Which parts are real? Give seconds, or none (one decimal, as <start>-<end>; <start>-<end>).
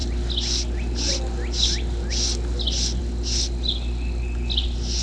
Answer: 0.0-5.0